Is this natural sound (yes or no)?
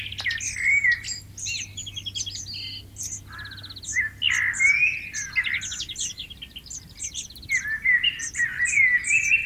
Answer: yes